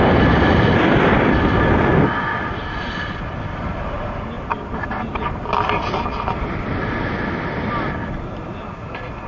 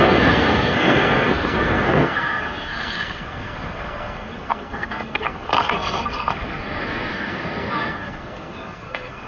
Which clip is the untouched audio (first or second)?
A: first